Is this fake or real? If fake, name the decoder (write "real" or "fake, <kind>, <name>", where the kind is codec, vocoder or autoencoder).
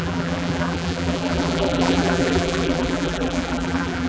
fake, vocoder, BigVGAN v2